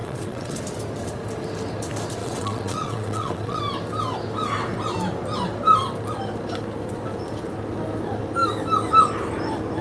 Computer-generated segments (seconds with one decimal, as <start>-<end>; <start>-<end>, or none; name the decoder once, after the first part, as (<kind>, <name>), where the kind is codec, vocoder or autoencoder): 0.0-0.6 (vocoder, WaveNeXt); 2.2-3.6